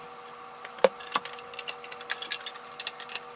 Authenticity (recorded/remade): recorded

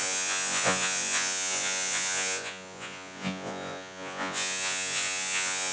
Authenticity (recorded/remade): remade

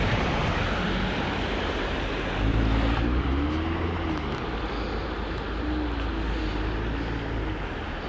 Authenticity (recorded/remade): recorded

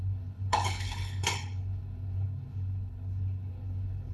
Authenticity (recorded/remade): remade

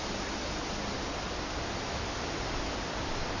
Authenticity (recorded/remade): recorded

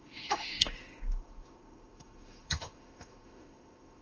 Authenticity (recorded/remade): remade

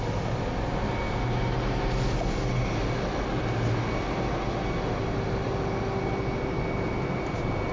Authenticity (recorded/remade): recorded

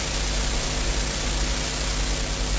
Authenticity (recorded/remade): recorded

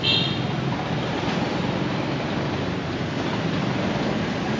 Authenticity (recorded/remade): recorded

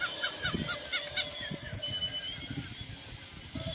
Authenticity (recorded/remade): recorded